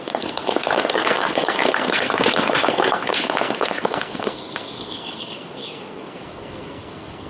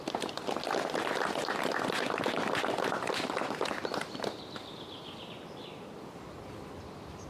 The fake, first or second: first